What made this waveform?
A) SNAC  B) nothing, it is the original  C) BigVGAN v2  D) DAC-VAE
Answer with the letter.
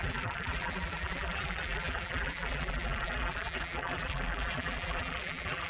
C